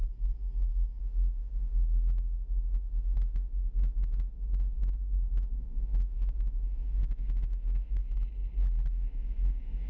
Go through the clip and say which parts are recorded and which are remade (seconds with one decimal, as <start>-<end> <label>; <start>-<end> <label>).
0.0-1.0 recorded; 1.0-8.0 remade; 8.0-8.9 recorded; 8.9-9.9 remade